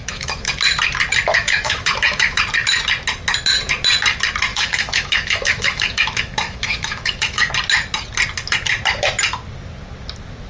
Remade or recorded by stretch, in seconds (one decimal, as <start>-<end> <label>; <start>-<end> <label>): 0.0-0.5 remade; 0.5-1.3 recorded; 1.3-2.4 remade; 2.4-4.5 recorded; 4.5-7.5 remade; 7.5-10.5 recorded